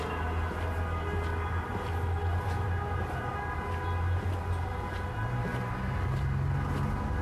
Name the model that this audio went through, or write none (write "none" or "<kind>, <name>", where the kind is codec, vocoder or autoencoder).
none